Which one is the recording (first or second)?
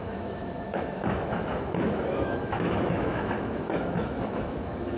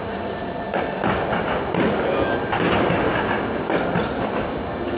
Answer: second